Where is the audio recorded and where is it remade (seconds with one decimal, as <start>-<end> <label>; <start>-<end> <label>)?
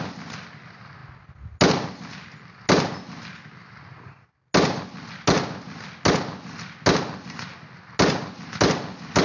0.0-9.2 recorded